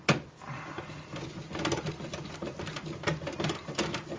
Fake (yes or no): no